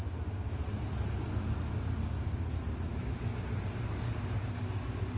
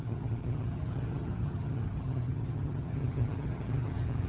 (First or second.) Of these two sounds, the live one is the first